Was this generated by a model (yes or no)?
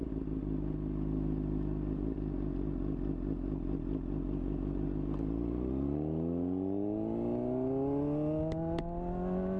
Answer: no